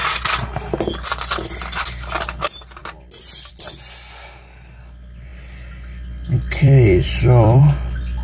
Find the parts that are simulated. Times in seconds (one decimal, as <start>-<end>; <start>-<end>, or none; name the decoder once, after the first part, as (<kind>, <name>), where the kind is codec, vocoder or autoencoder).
5.3-7.6 (vocoder, BigVGAN v2)